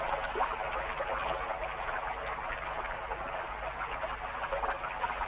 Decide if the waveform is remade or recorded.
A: recorded